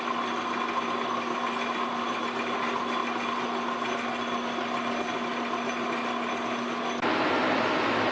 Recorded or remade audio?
recorded